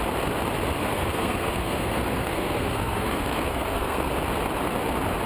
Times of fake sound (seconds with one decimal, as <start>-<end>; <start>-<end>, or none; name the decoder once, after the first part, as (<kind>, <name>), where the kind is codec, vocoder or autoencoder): 0.9-4.1 (codec, SNAC)